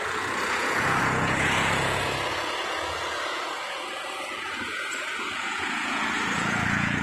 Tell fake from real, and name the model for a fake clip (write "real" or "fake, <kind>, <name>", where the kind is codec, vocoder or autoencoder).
fake, vocoder, Vocos